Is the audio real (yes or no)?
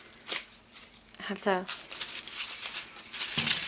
yes